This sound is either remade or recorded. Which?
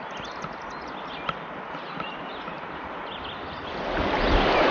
recorded